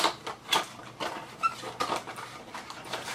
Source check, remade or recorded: remade